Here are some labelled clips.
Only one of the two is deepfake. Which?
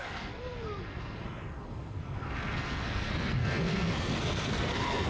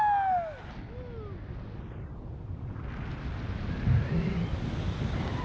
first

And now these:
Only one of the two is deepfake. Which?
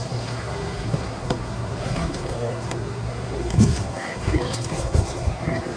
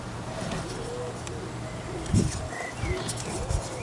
first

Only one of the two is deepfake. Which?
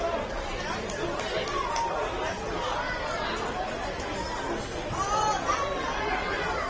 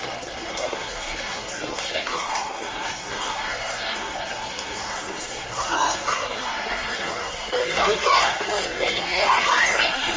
second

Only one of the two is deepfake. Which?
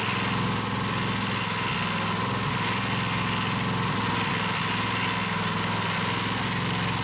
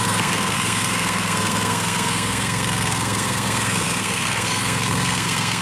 second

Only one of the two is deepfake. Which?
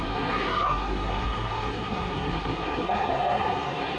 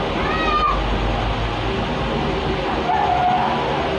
first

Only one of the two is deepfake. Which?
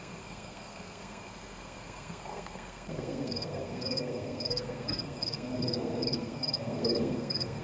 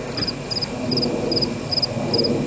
first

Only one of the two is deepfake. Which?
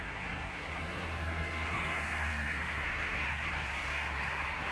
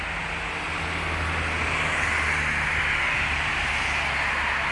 first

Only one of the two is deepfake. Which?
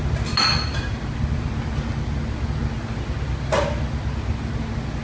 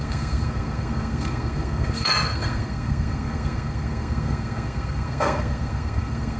second